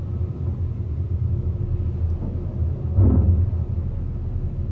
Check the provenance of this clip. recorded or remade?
recorded